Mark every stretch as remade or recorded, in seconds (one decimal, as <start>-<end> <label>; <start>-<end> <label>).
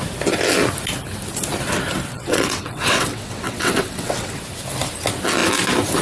0.0-2.1 recorded; 2.1-4.4 remade; 4.4-6.0 recorded